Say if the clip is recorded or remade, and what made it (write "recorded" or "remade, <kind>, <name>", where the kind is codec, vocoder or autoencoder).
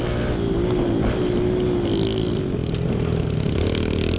recorded